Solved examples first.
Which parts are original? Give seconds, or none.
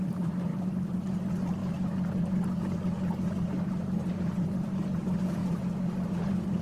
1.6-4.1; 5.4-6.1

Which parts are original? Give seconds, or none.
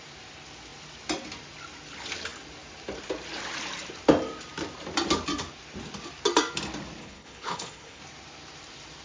0.0-7.0; 8.0-9.0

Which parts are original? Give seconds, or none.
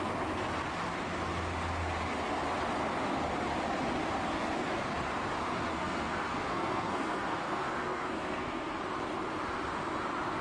0.0-5.7; 8.8-10.4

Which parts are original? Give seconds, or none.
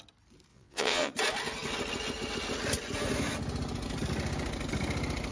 0.0-0.5; 1.1-5.3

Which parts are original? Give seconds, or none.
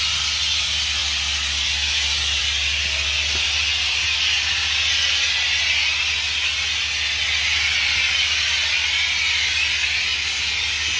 0.0-11.0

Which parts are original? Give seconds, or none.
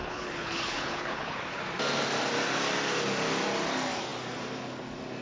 1.6-5.2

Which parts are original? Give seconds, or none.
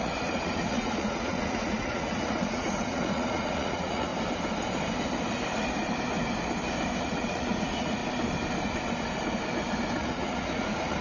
4.1-7.0; 8.0-10.0